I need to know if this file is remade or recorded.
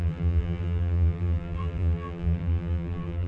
remade